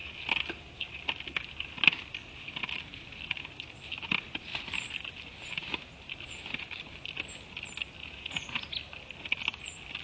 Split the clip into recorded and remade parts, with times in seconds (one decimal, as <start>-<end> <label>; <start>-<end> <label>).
0.0-8.0 recorded; 8.0-8.7 remade; 8.7-10.0 recorded